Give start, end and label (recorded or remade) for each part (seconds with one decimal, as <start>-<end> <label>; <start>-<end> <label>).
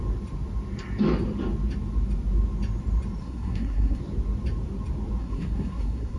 0.0-3.2 recorded; 3.2-4.0 remade; 4.0-5.2 recorded; 5.2-6.2 remade